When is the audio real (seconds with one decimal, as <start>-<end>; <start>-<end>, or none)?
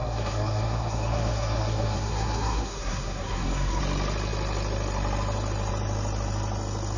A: 3.8-7.0